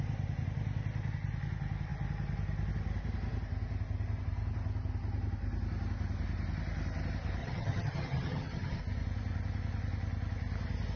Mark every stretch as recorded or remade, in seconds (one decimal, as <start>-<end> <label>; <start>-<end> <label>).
0.0-7.4 recorded; 7.4-8.8 remade; 8.8-11.0 recorded